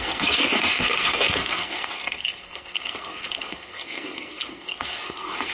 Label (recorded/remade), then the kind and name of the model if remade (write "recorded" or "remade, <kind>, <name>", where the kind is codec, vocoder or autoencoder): remade, codec, SNAC